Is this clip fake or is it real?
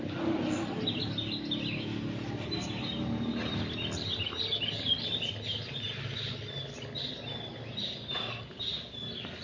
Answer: real